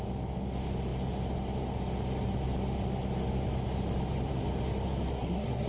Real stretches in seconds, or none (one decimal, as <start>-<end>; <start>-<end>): 0.0-5.1